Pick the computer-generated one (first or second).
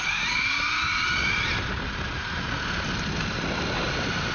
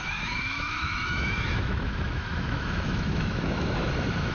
second